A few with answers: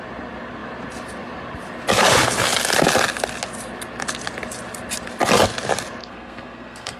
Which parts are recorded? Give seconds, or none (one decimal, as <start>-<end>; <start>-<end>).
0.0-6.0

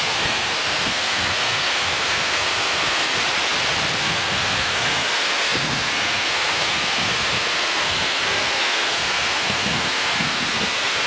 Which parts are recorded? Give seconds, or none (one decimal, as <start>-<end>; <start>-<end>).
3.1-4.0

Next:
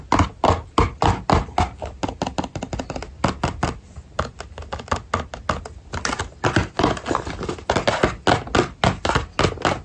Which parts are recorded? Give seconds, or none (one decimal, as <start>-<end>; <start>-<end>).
0.0-9.8